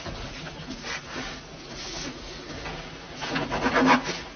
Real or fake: fake